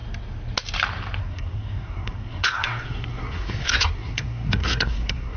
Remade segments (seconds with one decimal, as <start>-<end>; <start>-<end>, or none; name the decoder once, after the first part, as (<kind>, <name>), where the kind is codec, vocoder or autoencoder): 1.2-5.4 (codec, SNAC)